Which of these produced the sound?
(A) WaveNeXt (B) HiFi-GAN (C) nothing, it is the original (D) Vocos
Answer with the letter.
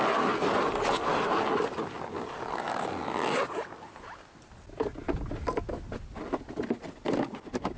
C